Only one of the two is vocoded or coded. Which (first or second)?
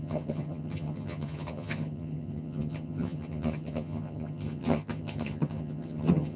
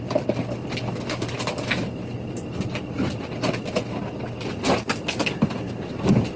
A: first